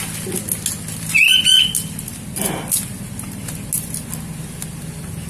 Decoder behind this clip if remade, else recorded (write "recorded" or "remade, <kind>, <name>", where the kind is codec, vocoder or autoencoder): recorded